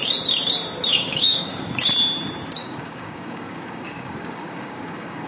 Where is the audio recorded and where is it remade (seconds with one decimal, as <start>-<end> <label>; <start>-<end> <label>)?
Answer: 0.0-0.9 recorded; 0.9-1.7 remade; 1.7-2.6 recorded; 2.6-5.3 remade